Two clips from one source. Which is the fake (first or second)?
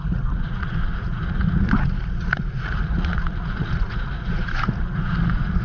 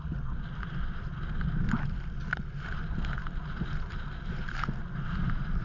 first